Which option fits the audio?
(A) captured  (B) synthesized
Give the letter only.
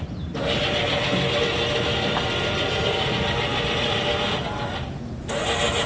A